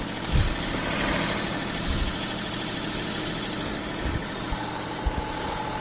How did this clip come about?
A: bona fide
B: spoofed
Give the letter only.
A